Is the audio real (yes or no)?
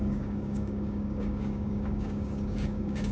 no